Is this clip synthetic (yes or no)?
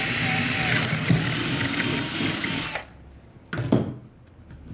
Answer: no